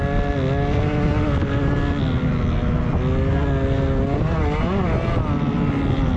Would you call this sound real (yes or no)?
yes